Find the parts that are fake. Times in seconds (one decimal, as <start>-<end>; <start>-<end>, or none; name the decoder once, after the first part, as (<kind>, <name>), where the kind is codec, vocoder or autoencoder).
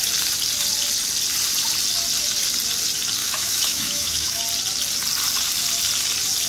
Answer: 3.2-4.4 (autoencoder, DAC-VAE)